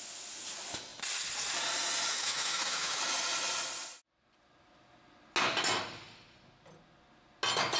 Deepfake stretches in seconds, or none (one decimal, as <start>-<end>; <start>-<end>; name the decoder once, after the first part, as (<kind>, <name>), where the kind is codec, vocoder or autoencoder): 2.1-3.0 (autoencoder, DAC-VAE)